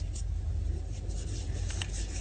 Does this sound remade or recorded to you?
recorded